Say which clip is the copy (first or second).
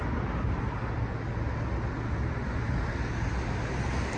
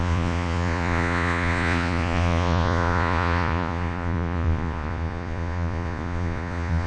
second